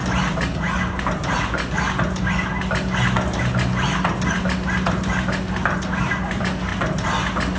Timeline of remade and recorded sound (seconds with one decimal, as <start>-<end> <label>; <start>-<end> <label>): 0.0-7.6 recorded

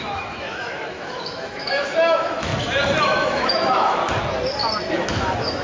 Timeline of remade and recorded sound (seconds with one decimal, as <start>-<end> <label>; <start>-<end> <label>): 0.0-2.5 remade; 2.5-3.0 recorded; 3.0-4.0 remade; 4.0-4.9 recorded; 4.9-5.6 remade

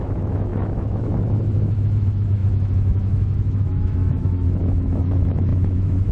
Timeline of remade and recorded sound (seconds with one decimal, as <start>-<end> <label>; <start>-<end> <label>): 0.0-6.1 remade

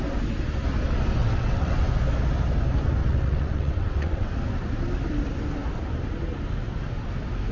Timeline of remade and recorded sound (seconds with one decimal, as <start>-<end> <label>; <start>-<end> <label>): 0.0-1.2 recorded; 1.2-1.9 remade; 1.9-3.0 recorded; 3.0-4.3 remade; 4.3-7.5 recorded